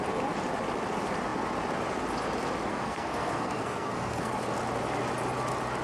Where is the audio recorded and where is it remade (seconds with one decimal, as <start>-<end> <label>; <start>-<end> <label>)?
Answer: 0.0-2.7 recorded; 2.7-4.3 remade; 4.3-5.8 recorded